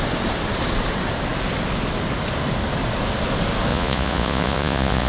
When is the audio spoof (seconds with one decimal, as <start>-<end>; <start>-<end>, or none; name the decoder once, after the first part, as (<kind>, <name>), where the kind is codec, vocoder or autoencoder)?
3.7-5.1 (vocoder, Vocos)